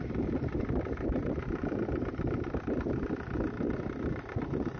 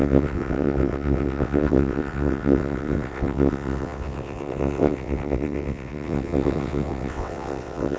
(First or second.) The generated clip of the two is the second